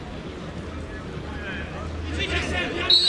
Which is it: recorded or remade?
recorded